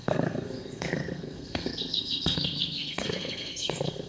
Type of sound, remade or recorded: remade